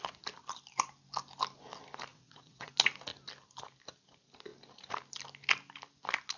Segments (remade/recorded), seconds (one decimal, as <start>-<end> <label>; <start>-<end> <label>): 0.0-2.1 recorded; 2.1-2.7 remade; 2.7-6.4 recorded